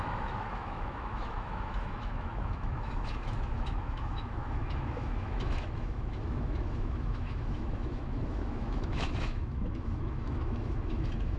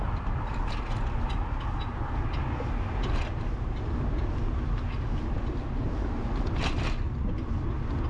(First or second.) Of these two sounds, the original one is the second